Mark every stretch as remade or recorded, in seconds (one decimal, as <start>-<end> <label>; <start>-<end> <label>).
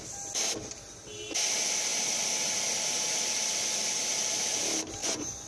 0.0-5.0 recorded; 5.0-5.5 remade